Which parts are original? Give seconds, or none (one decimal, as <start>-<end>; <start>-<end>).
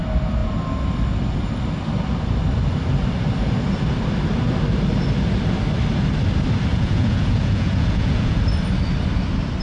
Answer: 0.0-6.7; 8.4-9.6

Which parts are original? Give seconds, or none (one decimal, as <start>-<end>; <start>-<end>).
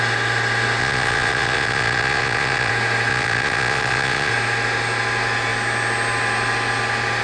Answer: 0.0-0.8; 2.7-3.1; 4.3-7.2